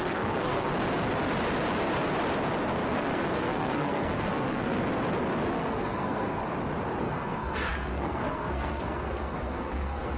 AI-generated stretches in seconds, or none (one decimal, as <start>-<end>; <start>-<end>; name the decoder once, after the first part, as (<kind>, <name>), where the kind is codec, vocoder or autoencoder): 0.0-0.7 (codec, SNAC); 2.9-4.8; 5.5-6.4; 7.0-10.2